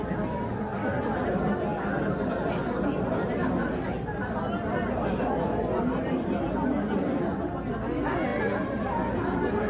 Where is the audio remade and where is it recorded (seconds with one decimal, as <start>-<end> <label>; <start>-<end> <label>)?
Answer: 0.0-9.7 recorded